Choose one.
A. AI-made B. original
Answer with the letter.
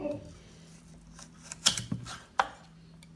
B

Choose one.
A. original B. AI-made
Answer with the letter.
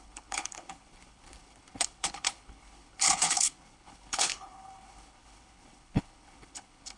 B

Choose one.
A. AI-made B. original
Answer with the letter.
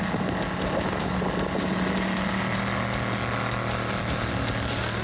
B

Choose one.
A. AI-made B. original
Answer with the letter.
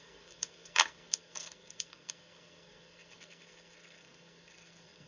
A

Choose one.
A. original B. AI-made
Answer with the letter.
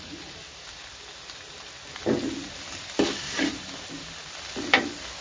A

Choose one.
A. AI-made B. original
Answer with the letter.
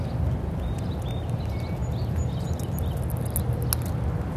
B